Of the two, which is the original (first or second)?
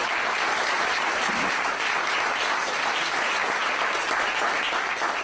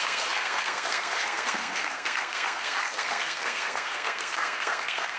first